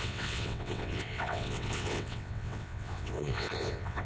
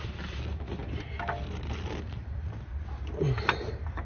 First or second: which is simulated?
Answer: first